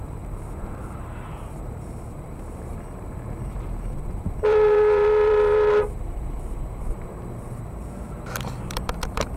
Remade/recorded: remade